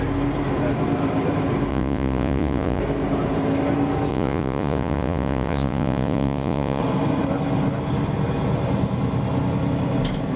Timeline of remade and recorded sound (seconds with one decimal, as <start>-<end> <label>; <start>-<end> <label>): 0.0-1.7 recorded; 1.7-2.8 remade; 2.8-4.1 recorded; 4.1-6.8 remade; 6.8-10.4 recorded